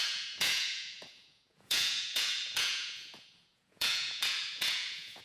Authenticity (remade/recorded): remade